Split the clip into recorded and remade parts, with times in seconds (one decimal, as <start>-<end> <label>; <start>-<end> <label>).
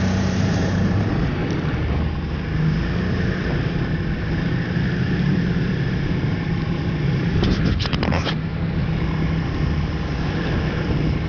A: 0.0-1.4 remade; 1.4-5.4 recorded; 5.4-8.5 remade; 8.5-10.9 recorded; 10.9-11.3 remade